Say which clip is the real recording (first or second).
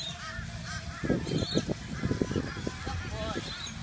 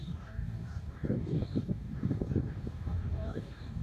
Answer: first